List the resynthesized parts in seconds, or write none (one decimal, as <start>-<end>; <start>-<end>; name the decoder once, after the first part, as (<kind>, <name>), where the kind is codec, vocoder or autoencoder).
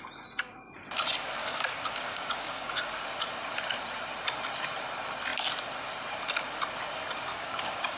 1.4-3.0 (codec, DAC); 7.3-8.0